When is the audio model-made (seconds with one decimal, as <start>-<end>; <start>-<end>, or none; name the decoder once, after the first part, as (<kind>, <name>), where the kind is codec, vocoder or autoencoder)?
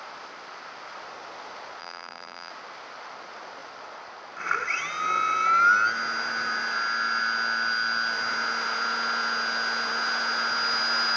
1.8-2.5 (vocoder, BigVGAN v2)